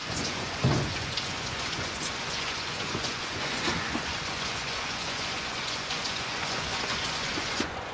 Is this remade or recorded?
remade